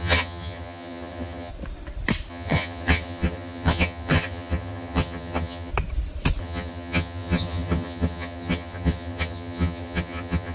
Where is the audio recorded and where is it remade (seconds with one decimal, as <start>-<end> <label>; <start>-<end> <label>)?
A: 0.0-1.5 remade; 1.5-2.3 recorded; 2.3-5.7 remade; 5.7-6.4 recorded; 6.4-10.5 remade